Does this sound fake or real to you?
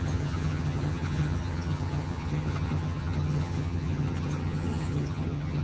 fake